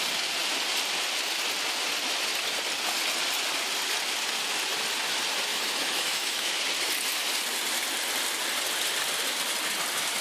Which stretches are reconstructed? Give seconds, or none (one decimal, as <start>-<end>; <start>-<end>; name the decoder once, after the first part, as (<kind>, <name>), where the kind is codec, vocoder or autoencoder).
5.5-6.6 (autoencoder, DAC-VAE)